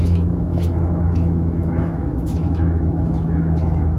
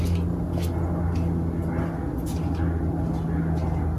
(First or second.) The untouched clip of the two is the second